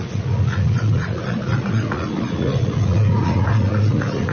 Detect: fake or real fake